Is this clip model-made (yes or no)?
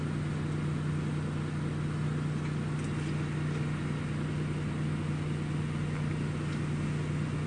no